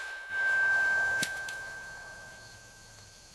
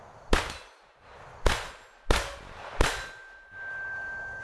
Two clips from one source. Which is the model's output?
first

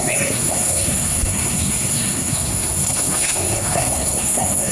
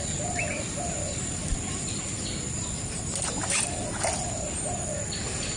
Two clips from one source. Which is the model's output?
first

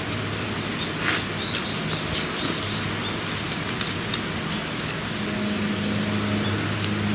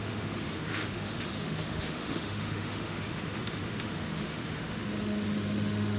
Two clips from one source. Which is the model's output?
second